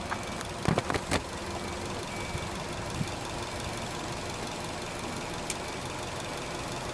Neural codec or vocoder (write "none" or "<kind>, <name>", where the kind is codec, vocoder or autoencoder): none